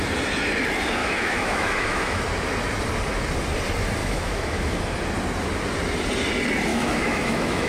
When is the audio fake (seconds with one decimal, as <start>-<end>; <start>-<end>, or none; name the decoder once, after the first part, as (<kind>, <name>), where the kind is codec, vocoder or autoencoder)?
1.0-2.2 (autoencoder, DAC-VAE); 4.0-4.8; 6.7-7.7